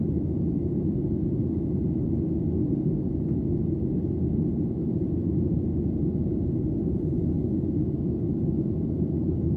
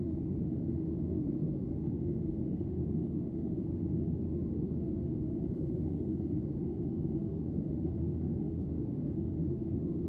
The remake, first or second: second